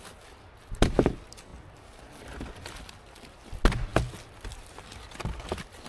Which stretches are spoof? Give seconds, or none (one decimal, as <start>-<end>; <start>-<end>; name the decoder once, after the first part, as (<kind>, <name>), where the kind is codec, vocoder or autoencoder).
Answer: none